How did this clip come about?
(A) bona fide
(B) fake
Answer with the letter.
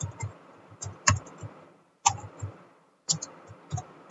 A